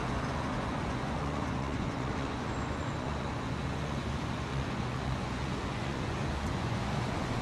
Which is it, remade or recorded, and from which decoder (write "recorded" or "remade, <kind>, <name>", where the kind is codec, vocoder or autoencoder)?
remade, vocoder, Vocos